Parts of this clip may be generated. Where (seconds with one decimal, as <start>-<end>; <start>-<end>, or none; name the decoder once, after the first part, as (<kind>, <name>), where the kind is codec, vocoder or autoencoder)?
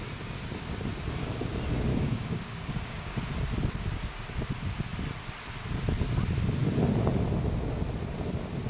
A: 1.9-3.2 (codec, DAC)